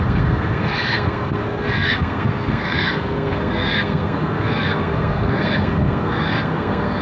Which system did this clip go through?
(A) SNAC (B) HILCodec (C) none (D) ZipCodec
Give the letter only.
A